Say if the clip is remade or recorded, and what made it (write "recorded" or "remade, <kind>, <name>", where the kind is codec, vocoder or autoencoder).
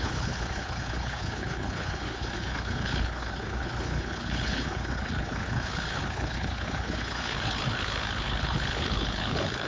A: remade, codec, HILCodec